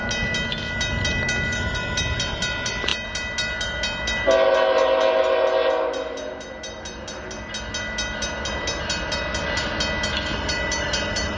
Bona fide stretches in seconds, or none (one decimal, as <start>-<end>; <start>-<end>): 0.0-11.4